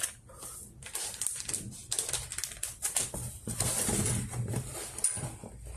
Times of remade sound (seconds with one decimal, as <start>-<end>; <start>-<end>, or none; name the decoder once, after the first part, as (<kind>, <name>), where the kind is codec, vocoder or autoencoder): 0.0-3.2 (vocoder, BigVGAN v2); 3.9-5.8